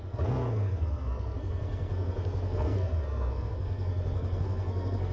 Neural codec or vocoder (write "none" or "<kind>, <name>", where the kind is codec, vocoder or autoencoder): codec, SNAC